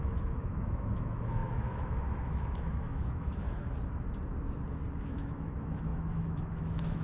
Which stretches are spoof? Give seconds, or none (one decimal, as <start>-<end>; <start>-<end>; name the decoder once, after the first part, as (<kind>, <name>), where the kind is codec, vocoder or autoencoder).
0.0-3.6 (autoencoder, DAC-VAE); 4.9-7.0